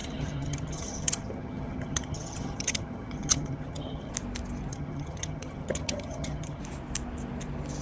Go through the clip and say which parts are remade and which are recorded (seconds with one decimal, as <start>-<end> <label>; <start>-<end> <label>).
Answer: 0.0-4.1 remade; 4.1-4.7 recorded; 4.7-6.6 remade; 6.6-7.8 recorded